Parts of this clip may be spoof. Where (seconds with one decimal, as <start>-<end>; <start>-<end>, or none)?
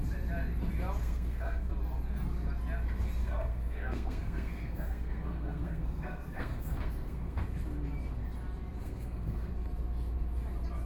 1.0-1.7; 3.2-7.4; 8.8-9.5